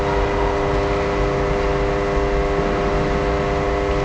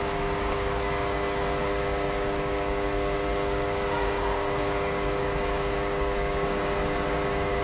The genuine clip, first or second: first